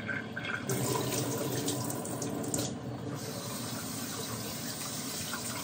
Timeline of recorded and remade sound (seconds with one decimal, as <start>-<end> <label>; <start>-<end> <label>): 0.0-5.6 recorded